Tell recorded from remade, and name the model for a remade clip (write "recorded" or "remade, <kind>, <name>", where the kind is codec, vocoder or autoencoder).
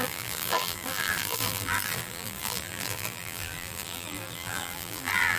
remade, vocoder, BigVGAN v2